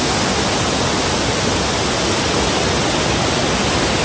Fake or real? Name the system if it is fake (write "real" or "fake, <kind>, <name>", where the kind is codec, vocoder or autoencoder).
real